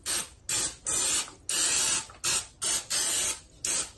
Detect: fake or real real